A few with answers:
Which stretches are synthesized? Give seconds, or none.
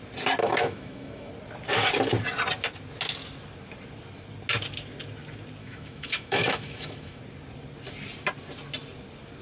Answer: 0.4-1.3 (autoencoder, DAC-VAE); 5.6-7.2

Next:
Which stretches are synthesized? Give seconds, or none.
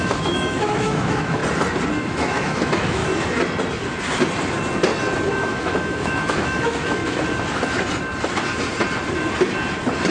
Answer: 0.0-1.4 (autoencoder, DAC-VAE); 2.0-3.0; 5.3-7.0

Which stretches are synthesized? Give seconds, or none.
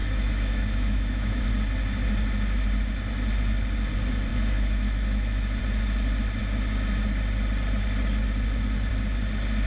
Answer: 0.0-1.4 (autoencoder, DAC-VAE); 4.3-5.6